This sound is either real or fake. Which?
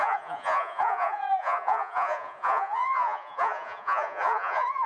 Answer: fake